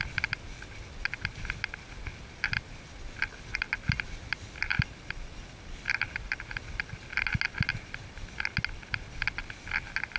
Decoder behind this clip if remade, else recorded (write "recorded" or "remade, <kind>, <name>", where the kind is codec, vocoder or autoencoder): recorded